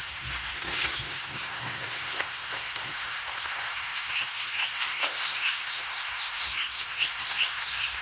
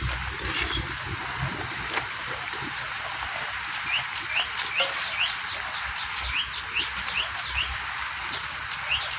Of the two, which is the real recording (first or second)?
second